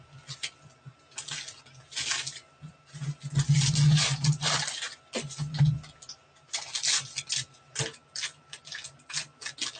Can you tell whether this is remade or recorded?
recorded